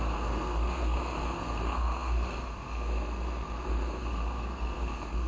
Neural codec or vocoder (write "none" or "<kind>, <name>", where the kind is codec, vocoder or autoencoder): codec, SNAC